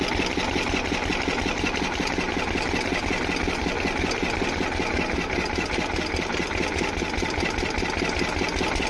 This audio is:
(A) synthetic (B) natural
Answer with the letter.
B